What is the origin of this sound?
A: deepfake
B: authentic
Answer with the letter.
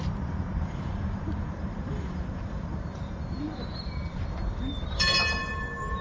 A